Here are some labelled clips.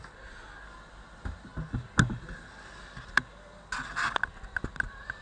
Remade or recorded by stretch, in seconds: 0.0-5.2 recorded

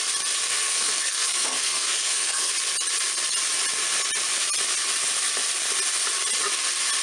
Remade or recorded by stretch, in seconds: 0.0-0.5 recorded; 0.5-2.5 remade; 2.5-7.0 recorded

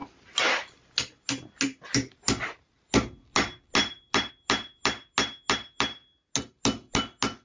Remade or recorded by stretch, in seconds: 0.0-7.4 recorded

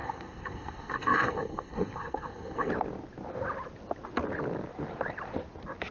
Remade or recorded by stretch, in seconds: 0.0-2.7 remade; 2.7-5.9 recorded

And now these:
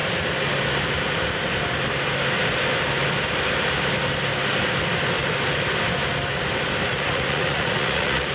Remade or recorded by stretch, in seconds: 0.0-6.9 recorded; 6.9-8.3 remade

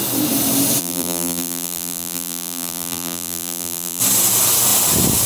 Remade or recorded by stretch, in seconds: 0.0-0.8 recorded; 0.8-4.0 remade; 4.0-5.3 recorded

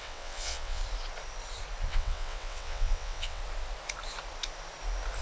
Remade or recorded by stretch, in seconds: 0.0-0.8 remade; 0.8-1.9 recorded; 1.9-3.4 remade; 3.4-5.2 recorded

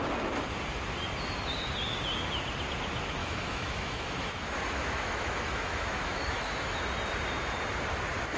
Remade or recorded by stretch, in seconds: 0.0-3.2 recorded; 3.2-6.8 remade; 6.8-8.4 recorded